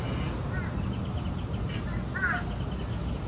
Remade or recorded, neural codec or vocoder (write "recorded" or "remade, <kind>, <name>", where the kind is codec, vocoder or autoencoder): recorded